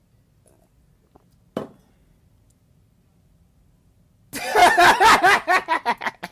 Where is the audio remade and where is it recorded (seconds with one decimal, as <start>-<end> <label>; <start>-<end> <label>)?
0.0-6.3 recorded